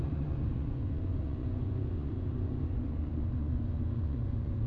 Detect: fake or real fake